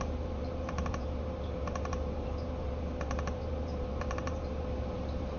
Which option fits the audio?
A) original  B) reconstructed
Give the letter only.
B